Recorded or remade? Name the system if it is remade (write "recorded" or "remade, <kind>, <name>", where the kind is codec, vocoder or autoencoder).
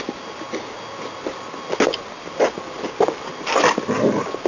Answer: recorded